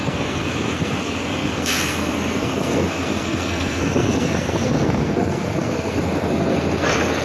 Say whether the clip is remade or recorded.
remade